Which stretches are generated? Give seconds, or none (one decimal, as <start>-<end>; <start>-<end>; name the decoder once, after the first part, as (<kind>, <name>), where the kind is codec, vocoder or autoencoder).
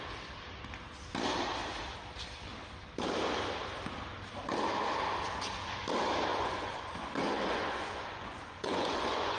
6.3-9.4 (vocoder, Vocos)